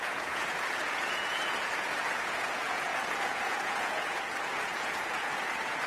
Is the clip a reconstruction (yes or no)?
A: yes